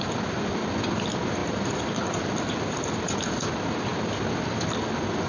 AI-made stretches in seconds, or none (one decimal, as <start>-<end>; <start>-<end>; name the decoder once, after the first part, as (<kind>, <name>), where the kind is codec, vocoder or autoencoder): none